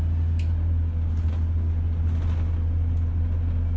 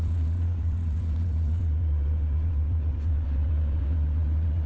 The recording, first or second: first